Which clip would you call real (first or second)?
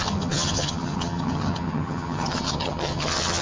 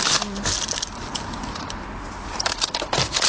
second